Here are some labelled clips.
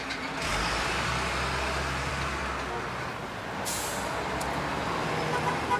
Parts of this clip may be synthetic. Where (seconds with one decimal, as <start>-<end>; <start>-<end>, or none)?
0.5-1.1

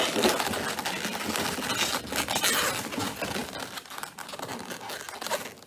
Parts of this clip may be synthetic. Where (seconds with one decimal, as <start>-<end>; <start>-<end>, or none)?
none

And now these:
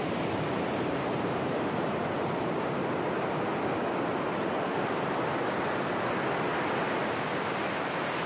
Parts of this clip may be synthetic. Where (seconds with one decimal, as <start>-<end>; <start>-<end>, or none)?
0.0-3.5; 7.6-8.3